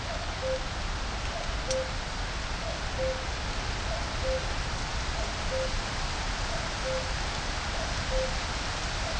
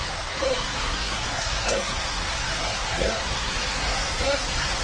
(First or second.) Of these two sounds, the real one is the first